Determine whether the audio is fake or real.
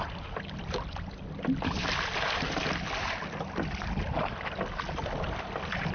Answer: real